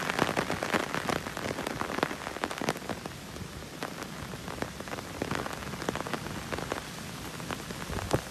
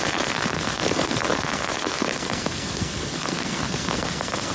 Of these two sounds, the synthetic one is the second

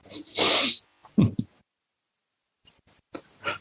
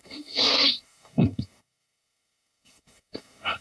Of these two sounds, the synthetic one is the second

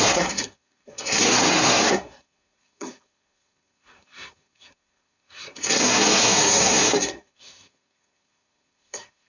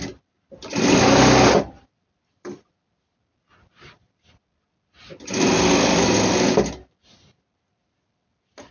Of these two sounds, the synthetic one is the first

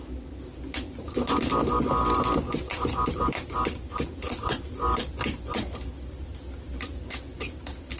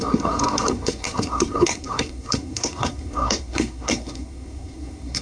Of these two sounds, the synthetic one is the second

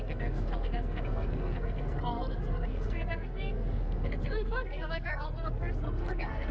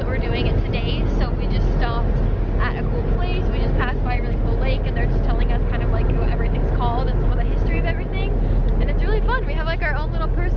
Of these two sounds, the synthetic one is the first